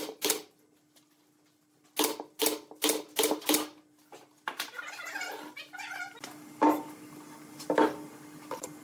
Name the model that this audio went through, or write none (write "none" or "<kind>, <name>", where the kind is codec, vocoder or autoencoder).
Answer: none